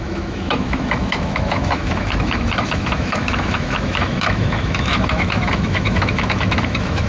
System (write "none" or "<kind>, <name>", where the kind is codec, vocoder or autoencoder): autoencoder, DAC-VAE